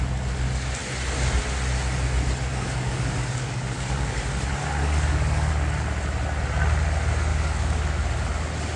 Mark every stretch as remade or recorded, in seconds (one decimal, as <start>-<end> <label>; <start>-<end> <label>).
0.0-2.5 recorded; 2.5-4.2 remade; 4.2-4.8 recorded; 4.8-5.5 remade; 5.5-7.3 recorded; 7.3-8.0 remade; 8.0-8.8 recorded